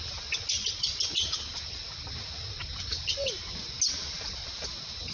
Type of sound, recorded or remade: recorded